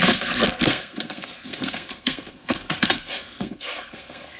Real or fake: fake